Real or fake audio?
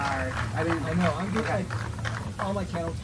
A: fake